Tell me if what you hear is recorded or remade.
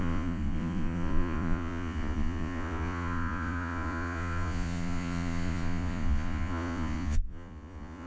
remade